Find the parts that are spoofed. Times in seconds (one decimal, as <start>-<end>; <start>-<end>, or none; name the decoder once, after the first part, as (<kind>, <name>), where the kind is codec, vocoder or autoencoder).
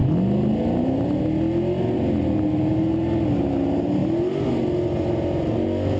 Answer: none